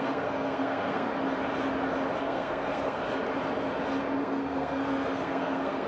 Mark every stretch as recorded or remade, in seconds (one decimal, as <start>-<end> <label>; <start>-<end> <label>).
0.0-1.1 remade; 1.1-2.2 recorded; 2.2-3.0 remade; 3.0-4.2 recorded; 4.2-5.9 remade